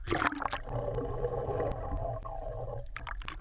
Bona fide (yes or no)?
yes